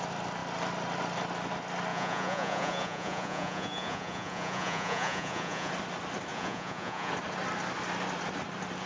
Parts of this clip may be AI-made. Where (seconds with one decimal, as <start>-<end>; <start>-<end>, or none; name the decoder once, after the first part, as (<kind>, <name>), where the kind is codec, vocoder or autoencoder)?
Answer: 1.9-5.7 (vocoder, Vocos); 6.3-7.1